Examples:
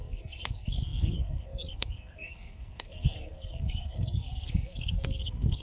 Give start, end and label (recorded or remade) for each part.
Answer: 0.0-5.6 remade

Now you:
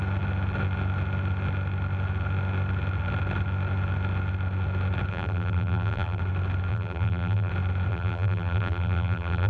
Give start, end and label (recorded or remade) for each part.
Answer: 0.0-5.1 recorded; 5.1-6.2 remade; 6.2-6.7 recorded; 6.7-7.5 remade; 7.5-7.9 recorded; 7.9-9.5 remade

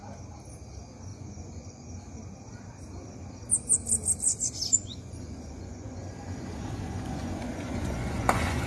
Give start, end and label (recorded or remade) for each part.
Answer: 0.0-1.1 recorded; 1.1-1.8 remade; 1.8-4.7 recorded; 4.7-8.7 remade

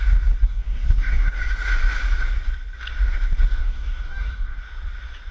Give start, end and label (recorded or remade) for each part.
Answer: 0.0-0.4 recorded; 0.4-1.4 remade; 1.4-3.6 recorded; 3.6-4.6 remade; 4.6-5.3 recorded

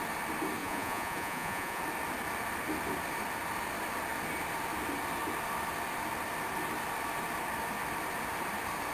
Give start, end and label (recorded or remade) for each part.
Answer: 0.0-0.6 recorded; 0.6-1.8 remade; 1.8-8.9 recorded

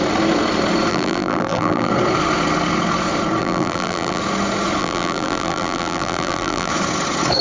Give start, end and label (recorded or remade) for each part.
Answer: 0.0-0.9 recorded; 0.9-1.9 remade; 1.9-3.4 recorded; 3.4-4.2 remade; 4.2-4.8 recorded; 4.8-6.7 remade; 6.7-7.4 recorded

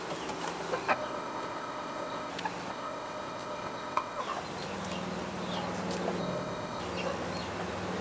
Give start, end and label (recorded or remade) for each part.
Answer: 0.0-0.9 recorded; 0.9-2.3 remade; 2.3-2.7 recorded; 2.7-4.2 remade; 4.2-6.2 recorded; 6.2-6.8 remade; 6.8-8.0 recorded

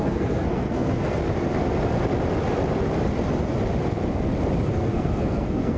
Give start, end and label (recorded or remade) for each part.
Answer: 0.0-1.2 remade; 1.2-4.7 recorded; 4.7-5.8 remade